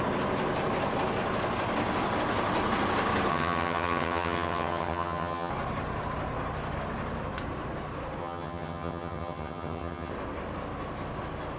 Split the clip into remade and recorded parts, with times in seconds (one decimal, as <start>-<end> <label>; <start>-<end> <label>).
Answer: 0.0-3.3 recorded; 3.3-5.5 remade; 5.5-8.2 recorded; 8.2-10.1 remade; 10.1-11.6 recorded